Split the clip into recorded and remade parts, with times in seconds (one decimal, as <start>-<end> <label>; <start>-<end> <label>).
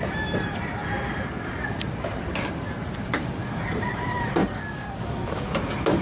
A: 0.0-4.4 remade; 4.4-5.0 recorded; 5.0-6.0 remade